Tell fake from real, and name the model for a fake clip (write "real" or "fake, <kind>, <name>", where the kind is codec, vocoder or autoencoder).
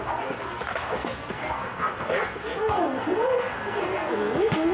fake, codec, SNAC